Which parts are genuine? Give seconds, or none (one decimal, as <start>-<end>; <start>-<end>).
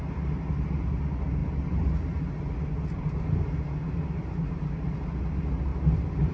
0.0-6.3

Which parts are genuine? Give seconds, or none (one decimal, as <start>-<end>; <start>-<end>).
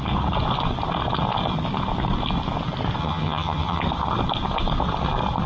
0.0-3.0; 3.8-5.5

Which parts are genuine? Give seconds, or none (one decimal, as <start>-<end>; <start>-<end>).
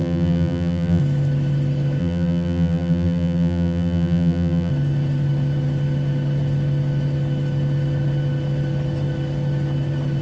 1.0-2.0; 4.7-10.2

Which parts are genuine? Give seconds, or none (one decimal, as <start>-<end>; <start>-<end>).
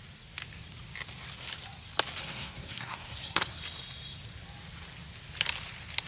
0.0-2.2; 3.6-6.1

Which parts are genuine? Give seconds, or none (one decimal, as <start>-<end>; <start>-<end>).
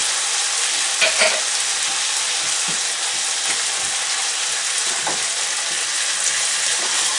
0.0-7.2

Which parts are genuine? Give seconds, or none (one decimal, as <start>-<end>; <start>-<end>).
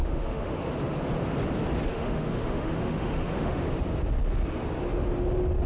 0.6-1.9; 3.6-5.7